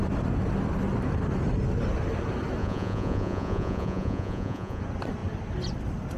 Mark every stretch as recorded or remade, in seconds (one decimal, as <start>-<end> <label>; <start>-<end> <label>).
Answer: 0.0-2.6 recorded; 2.6-4.8 remade; 4.8-6.2 recorded